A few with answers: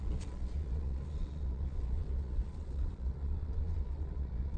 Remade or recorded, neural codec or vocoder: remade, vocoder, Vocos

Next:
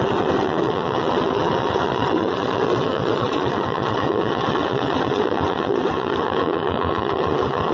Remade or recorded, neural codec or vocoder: remade, vocoder, WaveNeXt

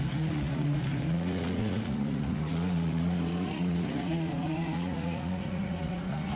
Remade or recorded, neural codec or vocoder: remade, vocoder, Vocos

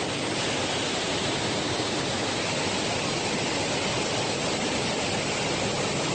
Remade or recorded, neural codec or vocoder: recorded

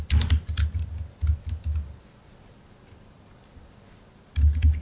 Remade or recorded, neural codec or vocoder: recorded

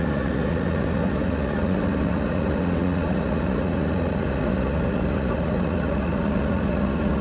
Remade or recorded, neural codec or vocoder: remade, vocoder, Vocos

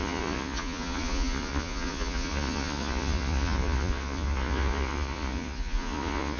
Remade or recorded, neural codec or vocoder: remade, vocoder, Vocos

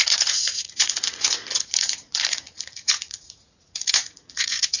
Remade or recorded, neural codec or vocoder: remade, vocoder, Vocos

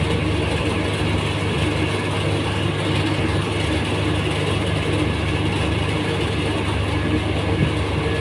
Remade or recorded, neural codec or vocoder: recorded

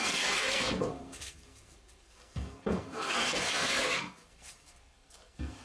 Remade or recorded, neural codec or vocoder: remade, codec, SNAC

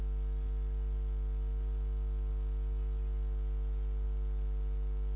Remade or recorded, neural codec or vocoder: recorded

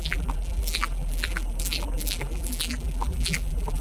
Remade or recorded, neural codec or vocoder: remade, vocoder, BigVGAN v2